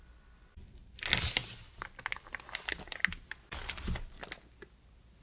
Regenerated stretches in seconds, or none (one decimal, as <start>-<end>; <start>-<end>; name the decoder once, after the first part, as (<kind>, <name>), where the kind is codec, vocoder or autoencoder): none